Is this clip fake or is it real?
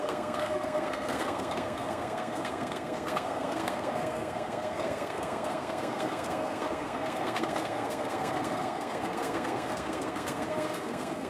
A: fake